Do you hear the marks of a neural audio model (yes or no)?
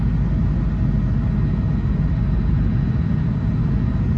no